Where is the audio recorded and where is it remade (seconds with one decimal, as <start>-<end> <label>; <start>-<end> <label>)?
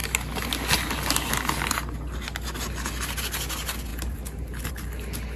0.0-5.4 recorded